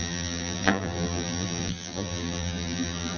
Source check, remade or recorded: remade